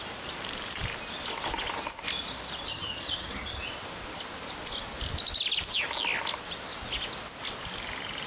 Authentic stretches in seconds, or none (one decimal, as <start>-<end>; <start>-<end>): 0.0-2.7; 3.6-8.3